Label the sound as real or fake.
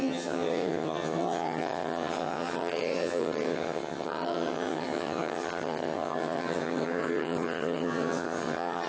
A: fake